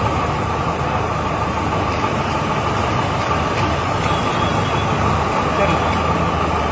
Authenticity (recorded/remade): recorded